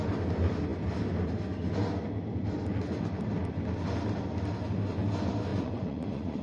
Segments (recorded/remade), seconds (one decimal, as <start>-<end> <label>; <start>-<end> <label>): 0.0-5.5 recorded; 5.5-6.4 remade